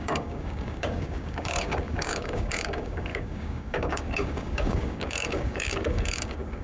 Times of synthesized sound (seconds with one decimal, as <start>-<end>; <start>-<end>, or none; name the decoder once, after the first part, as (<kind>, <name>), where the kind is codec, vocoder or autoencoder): 0.0-6.6 (codec, DAC)

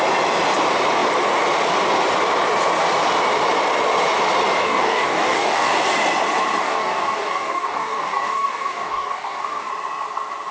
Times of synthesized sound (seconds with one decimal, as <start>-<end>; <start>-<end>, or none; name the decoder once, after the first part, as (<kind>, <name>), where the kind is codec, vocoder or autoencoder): 4.6-5.8 (codec, DAC); 6.6-9.7

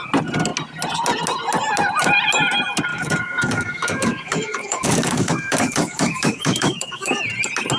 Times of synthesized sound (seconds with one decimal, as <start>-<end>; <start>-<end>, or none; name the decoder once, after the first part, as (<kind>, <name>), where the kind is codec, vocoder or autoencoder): 2.9-7.2 (codec, DAC)

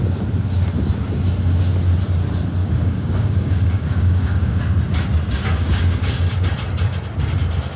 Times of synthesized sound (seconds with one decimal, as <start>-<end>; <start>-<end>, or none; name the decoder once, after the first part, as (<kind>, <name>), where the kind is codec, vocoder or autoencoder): 2.6-4.6 (codec, DAC); 5.4-6.0